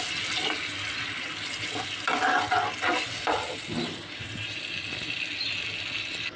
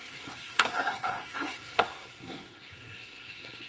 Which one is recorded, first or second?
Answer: first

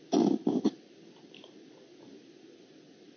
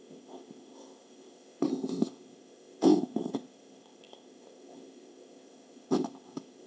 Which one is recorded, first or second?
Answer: first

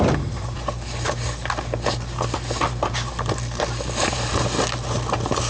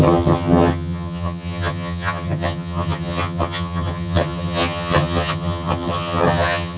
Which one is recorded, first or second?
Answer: first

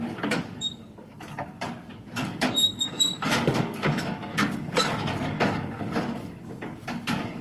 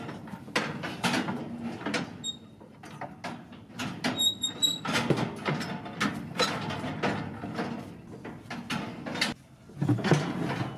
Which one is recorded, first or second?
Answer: second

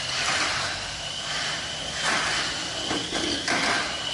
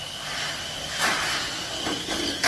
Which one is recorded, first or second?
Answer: second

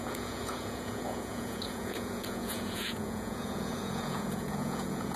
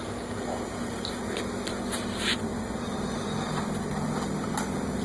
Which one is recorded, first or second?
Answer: second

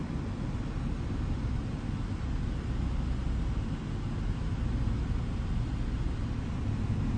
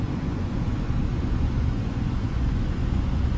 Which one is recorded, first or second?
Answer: first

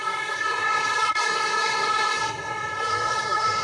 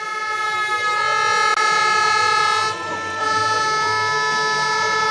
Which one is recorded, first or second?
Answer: second